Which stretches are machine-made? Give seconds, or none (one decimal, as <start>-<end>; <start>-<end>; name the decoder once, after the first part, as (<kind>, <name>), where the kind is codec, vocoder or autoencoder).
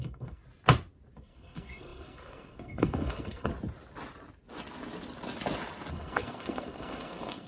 0.0-0.4 (codec, SNAC); 1.2-3.5; 5.9-7.5